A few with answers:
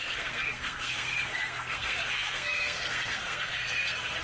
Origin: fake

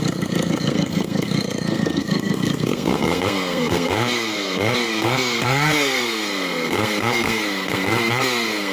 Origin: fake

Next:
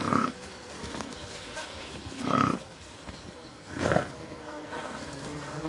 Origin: fake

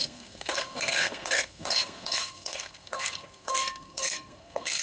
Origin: fake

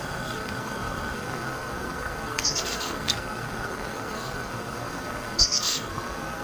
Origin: fake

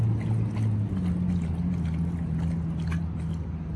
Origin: real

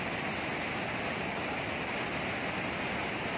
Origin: real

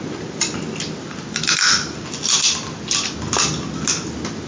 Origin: real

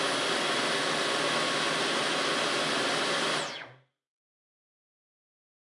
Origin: real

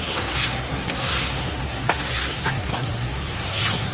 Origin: fake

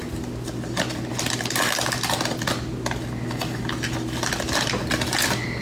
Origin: real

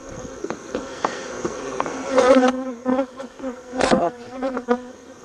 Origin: fake